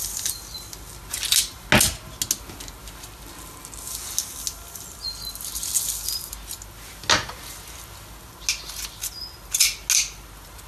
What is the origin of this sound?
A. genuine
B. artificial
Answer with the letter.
A